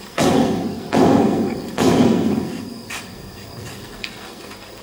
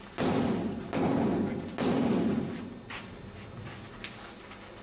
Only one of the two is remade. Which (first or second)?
first